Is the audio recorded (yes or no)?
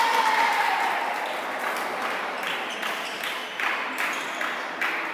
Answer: yes